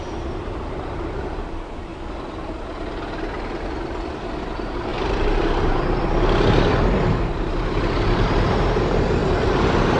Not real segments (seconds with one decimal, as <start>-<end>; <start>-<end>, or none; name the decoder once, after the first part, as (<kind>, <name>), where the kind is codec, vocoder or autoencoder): 0.0-1.9 (vocoder, BigVGAN v2); 4.5-10.0